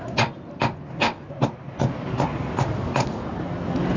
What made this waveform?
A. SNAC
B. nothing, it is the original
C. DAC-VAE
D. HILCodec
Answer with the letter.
B